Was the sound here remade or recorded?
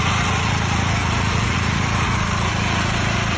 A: remade